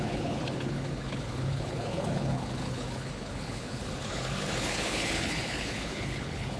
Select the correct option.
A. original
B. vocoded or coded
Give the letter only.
B